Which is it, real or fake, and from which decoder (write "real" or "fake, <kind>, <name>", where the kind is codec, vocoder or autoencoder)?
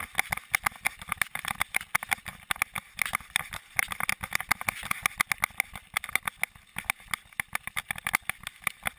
real